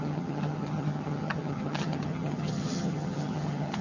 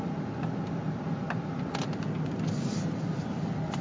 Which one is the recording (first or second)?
second